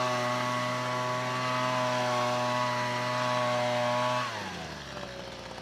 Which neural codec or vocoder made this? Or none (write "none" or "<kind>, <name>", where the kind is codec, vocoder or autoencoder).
none